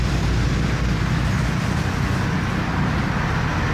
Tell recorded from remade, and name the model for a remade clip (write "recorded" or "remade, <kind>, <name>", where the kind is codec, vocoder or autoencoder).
recorded